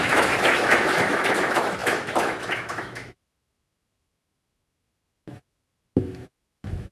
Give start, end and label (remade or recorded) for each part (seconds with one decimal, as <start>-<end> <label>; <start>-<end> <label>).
0.0-6.9 remade